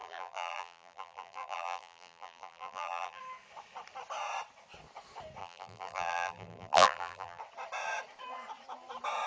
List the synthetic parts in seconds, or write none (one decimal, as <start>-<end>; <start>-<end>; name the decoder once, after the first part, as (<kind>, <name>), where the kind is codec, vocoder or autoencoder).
0.0-3.2 (vocoder, BigVGAN v2); 5.4-7.4